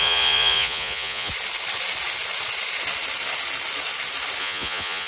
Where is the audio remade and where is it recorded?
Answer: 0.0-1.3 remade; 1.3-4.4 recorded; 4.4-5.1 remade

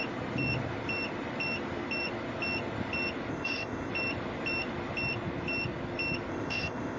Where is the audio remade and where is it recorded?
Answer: 0.0-3.3 recorded; 3.3-3.9 remade; 3.9-6.3 recorded; 6.3-7.0 remade

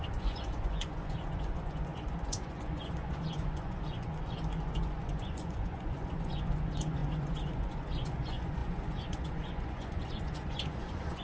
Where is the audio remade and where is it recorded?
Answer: 0.0-11.2 remade